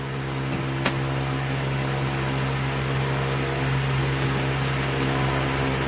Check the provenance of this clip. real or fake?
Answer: real